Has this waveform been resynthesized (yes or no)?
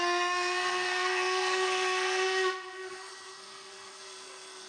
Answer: yes